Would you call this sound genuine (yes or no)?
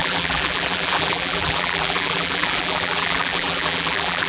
no